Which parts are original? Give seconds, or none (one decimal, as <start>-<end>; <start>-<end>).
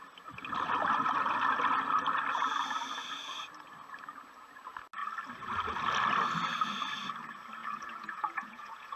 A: 0.0-7.6